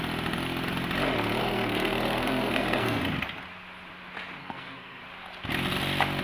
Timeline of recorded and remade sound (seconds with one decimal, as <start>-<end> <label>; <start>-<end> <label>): 0.0-1.4 recorded; 1.4-3.0 remade; 3.0-4.4 recorded; 4.4-5.0 remade; 5.0-6.2 recorded